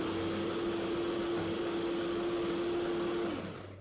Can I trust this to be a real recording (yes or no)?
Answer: yes